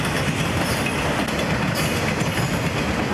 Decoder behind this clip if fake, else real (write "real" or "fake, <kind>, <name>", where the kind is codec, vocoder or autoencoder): real